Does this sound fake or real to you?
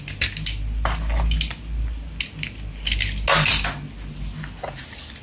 real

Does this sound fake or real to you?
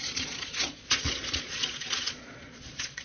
fake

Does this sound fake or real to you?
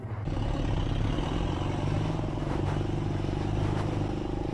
real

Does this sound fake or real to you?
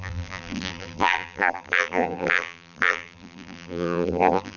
fake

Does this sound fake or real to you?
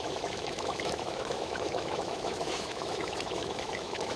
fake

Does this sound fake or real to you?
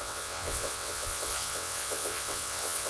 fake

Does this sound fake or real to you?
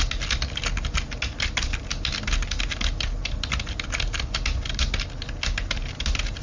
real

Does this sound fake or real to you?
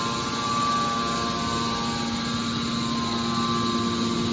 real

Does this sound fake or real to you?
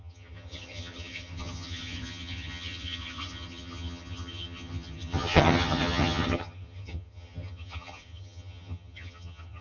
fake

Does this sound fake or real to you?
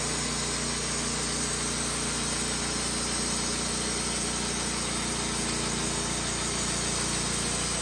real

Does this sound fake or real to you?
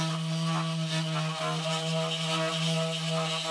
real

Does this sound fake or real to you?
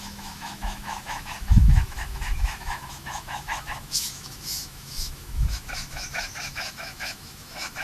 fake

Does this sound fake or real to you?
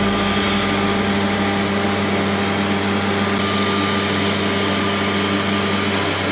real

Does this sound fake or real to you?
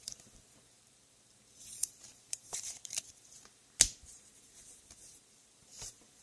fake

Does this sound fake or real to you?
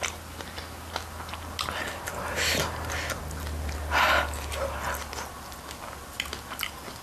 real